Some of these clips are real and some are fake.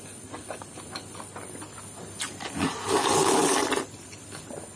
real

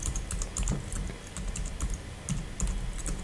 real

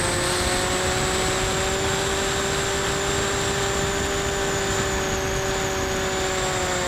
real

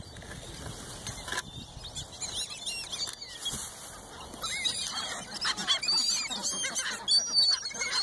real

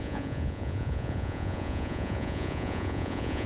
fake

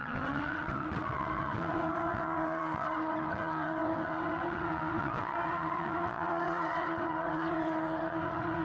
fake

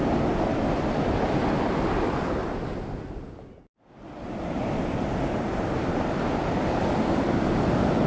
real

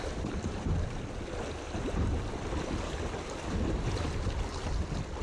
fake